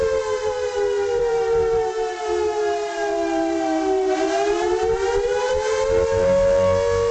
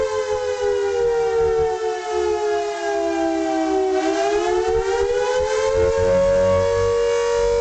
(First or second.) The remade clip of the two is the first